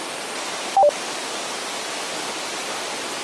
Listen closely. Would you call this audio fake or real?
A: real